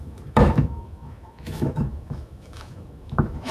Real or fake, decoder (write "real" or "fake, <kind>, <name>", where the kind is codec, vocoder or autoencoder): fake, autoencoder, DAC-VAE